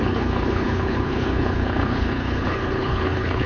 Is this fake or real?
fake